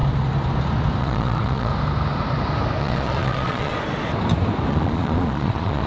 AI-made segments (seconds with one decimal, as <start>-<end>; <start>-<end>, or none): 1.0-1.7; 2.8-3.7; 4.7-5.9